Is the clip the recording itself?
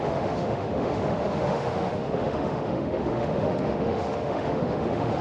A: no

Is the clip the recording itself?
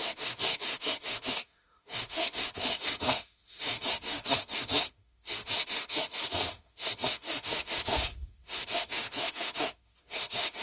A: no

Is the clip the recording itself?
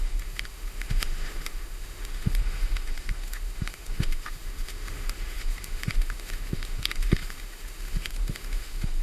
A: no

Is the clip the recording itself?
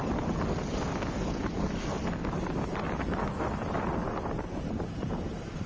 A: yes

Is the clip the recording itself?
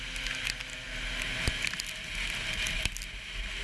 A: yes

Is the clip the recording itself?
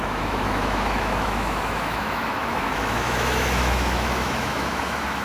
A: no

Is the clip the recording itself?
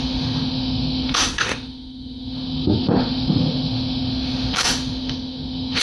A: no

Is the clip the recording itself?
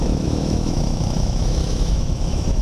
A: no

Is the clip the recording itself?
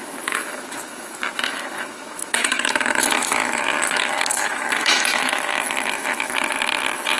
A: no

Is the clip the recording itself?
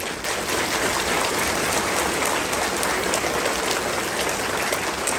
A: yes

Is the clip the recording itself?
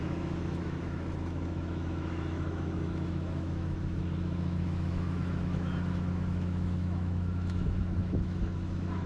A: no